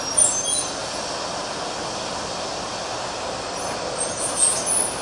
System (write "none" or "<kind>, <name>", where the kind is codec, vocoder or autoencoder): none